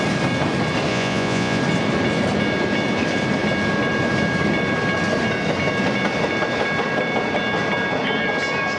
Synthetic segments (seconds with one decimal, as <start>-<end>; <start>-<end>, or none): 0.9-1.6